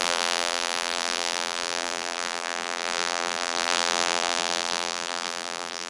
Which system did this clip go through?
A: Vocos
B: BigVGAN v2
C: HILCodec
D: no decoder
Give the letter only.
B